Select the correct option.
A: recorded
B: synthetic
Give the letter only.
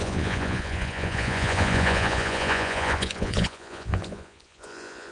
B